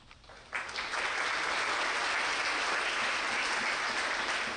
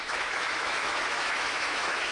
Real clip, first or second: first